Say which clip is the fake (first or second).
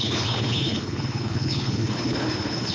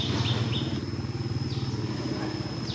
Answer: first